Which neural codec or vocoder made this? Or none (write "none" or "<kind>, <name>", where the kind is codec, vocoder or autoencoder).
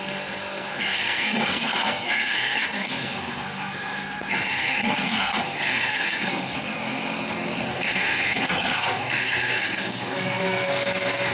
codec, SNAC